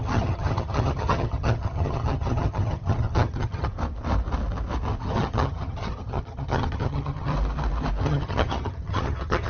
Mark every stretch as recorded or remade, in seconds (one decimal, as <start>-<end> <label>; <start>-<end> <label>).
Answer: 0.0-3.7 remade; 3.7-5.0 recorded; 5.0-7.3 remade; 7.3-8.0 recorded; 8.0-9.5 remade